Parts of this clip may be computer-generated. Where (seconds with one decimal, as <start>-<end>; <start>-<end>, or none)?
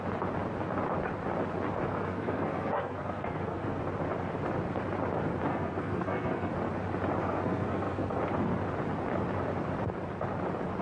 1.9-3.8; 5.5-6.5; 7.2-8.2